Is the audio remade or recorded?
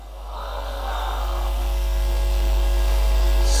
remade